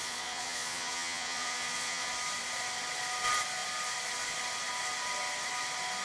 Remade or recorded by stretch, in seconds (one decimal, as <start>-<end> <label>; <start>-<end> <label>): 0.0-2.1 remade; 2.1-6.0 recorded

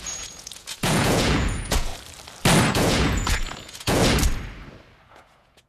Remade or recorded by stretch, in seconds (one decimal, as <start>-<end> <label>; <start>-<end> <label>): 0.0-1.9 remade; 1.9-2.7 recorded; 2.7-4.0 remade; 4.0-5.1 recorded; 5.1-5.7 remade